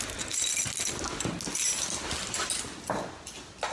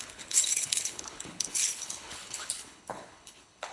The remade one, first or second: second